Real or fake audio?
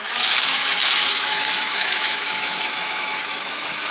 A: fake